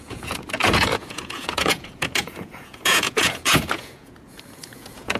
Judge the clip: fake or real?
fake